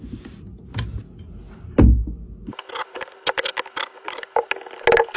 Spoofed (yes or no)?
no